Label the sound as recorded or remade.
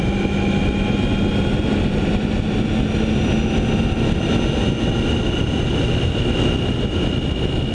recorded